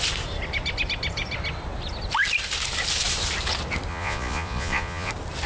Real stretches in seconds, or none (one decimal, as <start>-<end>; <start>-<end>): 0.0-3.9; 5.1-5.5